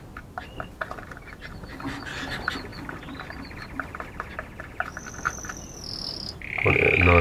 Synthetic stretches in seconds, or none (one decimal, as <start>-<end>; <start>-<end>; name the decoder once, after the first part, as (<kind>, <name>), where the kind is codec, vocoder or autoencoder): none